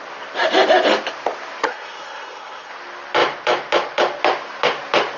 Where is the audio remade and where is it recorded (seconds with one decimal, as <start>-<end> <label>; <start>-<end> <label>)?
0.0-1.7 recorded; 1.7-2.7 remade; 2.7-5.2 recorded